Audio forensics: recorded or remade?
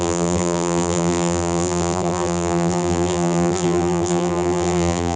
remade